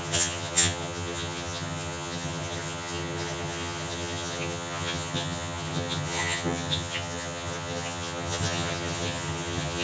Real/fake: fake